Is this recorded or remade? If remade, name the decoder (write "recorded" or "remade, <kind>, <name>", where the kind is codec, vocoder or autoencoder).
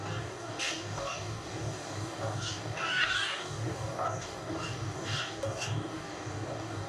remade, codec, DAC